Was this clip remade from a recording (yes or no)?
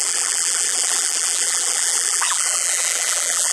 yes